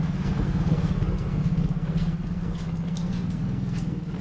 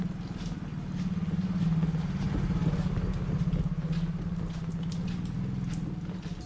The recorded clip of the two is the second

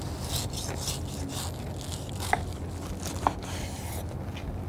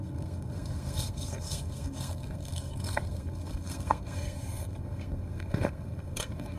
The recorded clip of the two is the first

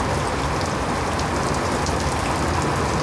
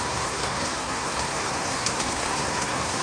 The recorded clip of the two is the first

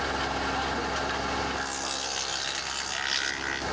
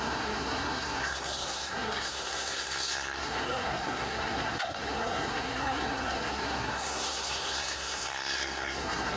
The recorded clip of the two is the first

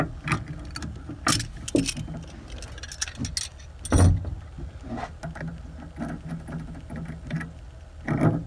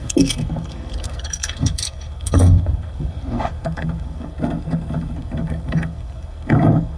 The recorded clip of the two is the first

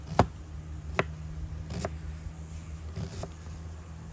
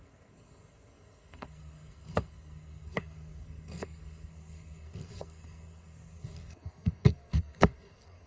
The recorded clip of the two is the first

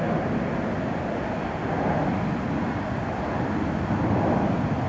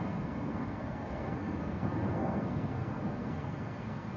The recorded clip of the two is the first